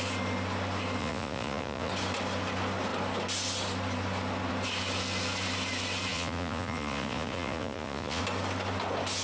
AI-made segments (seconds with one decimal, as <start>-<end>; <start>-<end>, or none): 1.0-1.9; 6.1-8.2